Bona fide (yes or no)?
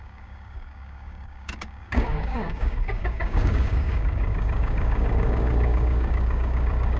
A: no